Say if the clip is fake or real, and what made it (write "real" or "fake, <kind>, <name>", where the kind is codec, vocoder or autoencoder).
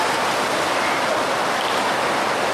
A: real